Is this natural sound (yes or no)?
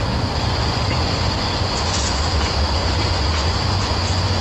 no